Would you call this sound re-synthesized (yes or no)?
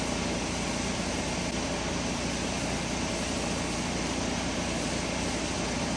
no